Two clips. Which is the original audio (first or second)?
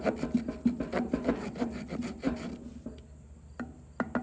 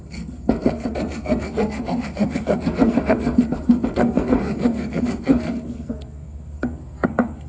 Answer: first